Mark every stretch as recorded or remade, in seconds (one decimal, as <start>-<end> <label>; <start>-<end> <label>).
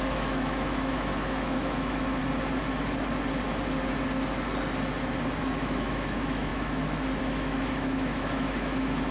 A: 0.0-2.2 remade; 2.2-5.4 recorded; 5.4-9.1 remade